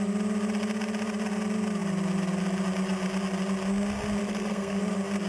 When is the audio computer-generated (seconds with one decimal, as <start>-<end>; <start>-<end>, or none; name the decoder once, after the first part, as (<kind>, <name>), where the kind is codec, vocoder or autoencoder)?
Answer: 4.2-4.8 (codec, SNAC)